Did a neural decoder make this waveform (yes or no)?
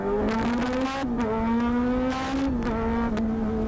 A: no